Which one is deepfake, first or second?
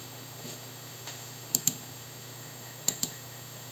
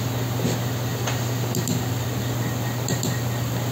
first